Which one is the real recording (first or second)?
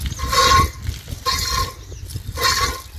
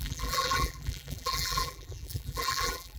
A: first